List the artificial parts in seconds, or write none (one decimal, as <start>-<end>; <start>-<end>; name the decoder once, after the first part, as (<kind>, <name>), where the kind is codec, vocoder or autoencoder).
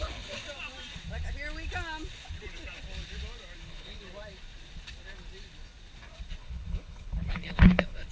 0.0-0.4 (codec, HILCodec); 3.6-4.0; 6.4-8.1